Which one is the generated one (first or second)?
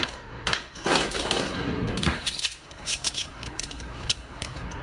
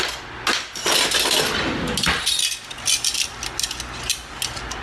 first